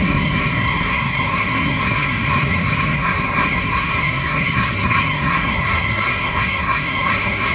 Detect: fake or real fake